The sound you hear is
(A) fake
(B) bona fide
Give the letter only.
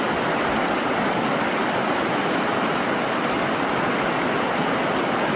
B